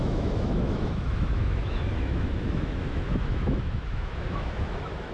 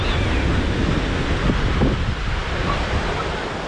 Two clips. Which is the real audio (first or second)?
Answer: second